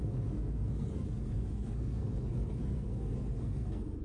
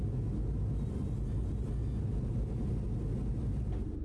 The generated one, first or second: first